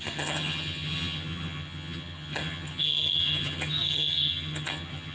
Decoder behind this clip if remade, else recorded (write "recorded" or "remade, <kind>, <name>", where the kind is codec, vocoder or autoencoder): remade, vocoder, HiFi-GAN